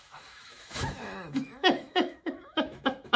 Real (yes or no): no